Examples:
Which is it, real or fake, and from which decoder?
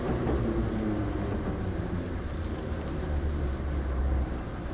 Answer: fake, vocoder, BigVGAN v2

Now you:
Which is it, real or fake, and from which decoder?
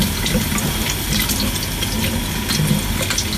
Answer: real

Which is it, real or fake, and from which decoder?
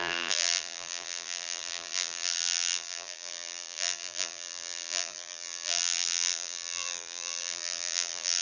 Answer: fake, vocoder, BigVGAN v2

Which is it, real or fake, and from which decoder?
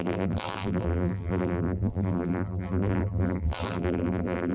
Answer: fake, vocoder, BigVGAN v2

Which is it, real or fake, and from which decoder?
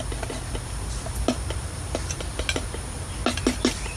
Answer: real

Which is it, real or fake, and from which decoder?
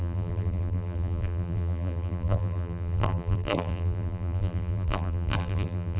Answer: fake, vocoder, BigVGAN v2